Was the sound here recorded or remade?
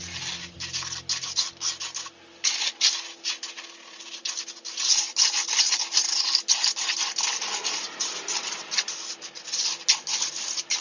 recorded